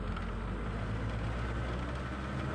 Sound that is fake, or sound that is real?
real